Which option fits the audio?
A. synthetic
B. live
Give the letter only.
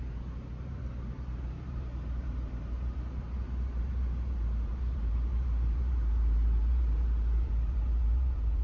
A